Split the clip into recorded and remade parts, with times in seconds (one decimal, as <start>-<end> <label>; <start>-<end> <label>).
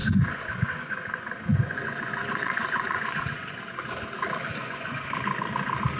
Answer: 0.0-3.6 remade; 3.6-4.5 recorded; 4.5-5.1 remade; 5.1-6.0 recorded